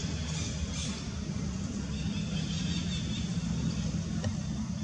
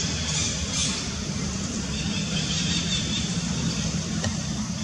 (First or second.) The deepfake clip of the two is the second